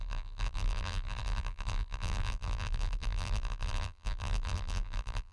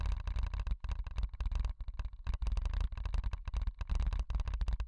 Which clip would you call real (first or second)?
second